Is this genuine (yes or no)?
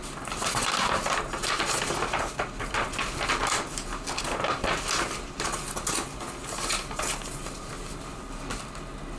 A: yes